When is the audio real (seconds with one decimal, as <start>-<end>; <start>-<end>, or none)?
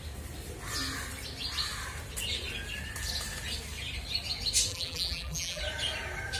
0.0-4.7; 5.6-6.4